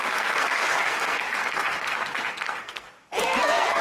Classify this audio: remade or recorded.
remade